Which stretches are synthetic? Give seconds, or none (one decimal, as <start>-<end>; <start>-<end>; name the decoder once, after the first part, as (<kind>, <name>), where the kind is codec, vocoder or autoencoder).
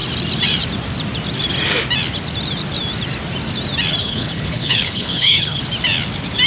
4.0-5.6 (codec, HILCodec)